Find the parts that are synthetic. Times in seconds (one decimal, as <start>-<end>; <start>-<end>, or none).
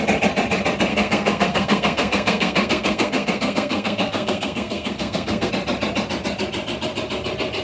0.9-5.5